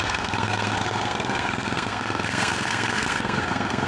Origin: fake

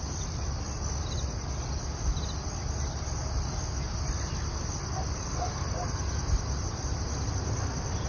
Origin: real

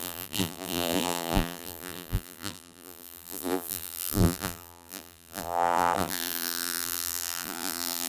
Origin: fake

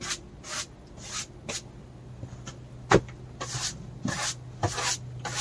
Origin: real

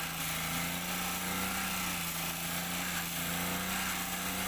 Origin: real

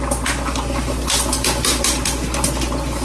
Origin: real